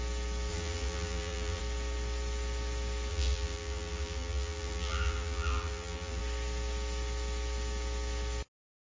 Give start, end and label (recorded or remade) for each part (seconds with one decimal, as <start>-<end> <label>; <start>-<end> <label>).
0.0-0.5 recorded; 0.5-1.6 remade; 1.6-3.1 recorded; 3.1-6.2 remade; 6.2-8.8 recorded